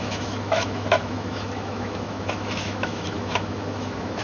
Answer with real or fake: fake